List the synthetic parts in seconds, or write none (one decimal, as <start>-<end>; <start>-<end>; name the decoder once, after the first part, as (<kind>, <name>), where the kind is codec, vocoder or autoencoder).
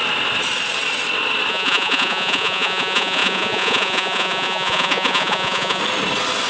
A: 1.5-5.8 (vocoder, Vocos)